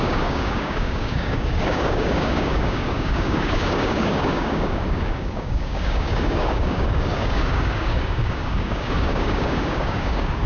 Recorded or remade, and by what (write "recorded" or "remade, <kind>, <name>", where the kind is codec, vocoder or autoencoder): remade, codec, DAC